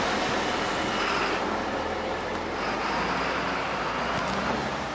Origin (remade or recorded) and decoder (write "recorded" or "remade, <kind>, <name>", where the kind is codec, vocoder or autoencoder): recorded